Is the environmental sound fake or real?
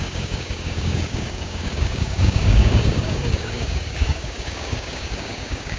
fake